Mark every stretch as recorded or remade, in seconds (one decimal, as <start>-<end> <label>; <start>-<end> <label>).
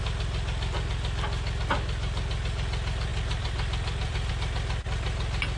0.0-3.1 recorded; 3.1-4.3 remade; 4.3-5.6 recorded